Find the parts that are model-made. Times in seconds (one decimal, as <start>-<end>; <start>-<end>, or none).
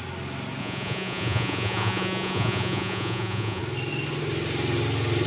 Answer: 0.6-3.6